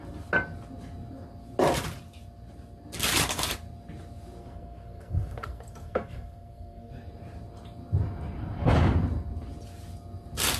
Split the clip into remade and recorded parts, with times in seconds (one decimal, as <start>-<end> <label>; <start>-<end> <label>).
0.0-4.4 recorded; 4.4-6.9 remade; 6.9-10.6 recorded